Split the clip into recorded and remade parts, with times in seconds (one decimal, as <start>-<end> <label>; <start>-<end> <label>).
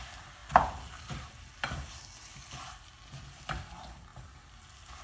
0.0-5.0 recorded